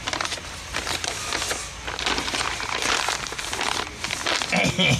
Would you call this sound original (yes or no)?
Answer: yes